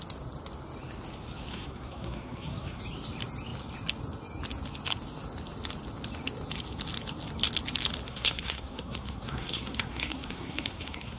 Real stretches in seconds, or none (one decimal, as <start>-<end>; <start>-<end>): 0.0-1.5; 2.8-8.1